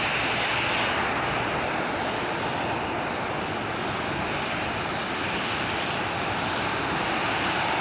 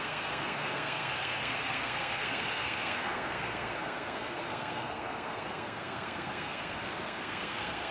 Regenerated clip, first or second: second